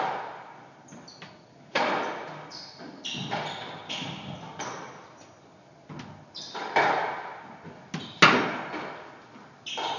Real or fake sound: real